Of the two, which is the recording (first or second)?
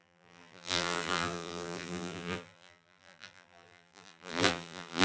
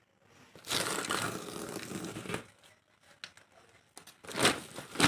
second